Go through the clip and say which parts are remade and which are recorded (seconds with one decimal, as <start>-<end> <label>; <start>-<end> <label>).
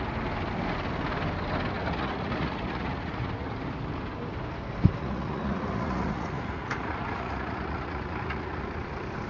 0.0-1.8 recorded; 1.8-3.5 remade; 3.5-5.0 recorded; 5.0-8.9 remade; 8.9-9.3 recorded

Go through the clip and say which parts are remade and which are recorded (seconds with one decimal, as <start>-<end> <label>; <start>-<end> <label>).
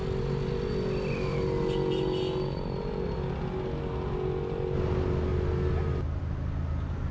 0.0-7.1 recorded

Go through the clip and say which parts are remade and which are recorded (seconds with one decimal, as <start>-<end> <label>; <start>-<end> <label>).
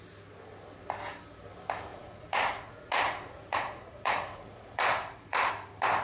0.0-1.9 recorded; 1.9-5.5 remade; 5.5-6.0 recorded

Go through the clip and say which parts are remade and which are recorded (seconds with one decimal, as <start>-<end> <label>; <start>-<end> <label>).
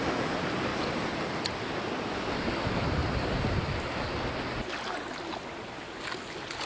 0.0-6.7 recorded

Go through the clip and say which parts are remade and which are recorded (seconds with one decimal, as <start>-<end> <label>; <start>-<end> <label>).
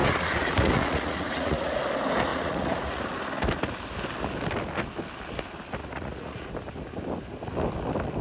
0.0-1.8 remade; 1.8-2.3 recorded; 2.3-3.0 remade; 3.0-5.8 recorded; 5.8-6.5 remade; 6.5-8.2 recorded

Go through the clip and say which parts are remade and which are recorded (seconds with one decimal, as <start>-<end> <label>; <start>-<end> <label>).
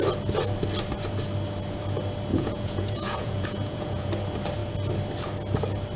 0.0-2.3 recorded; 2.3-4.1 remade; 4.1-6.0 recorded